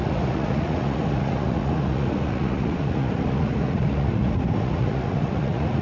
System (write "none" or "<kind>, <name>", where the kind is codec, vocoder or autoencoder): vocoder, Vocos